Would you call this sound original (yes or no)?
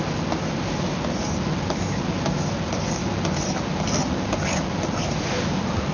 yes